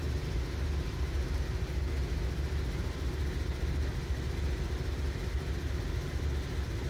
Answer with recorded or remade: recorded